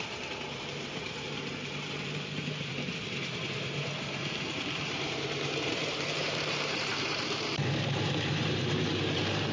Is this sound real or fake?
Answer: fake